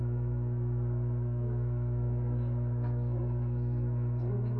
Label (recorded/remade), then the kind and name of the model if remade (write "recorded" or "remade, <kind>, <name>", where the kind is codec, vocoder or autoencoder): remade, codec, SNAC